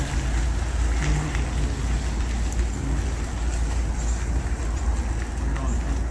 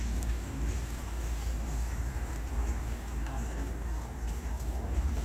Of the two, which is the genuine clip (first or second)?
first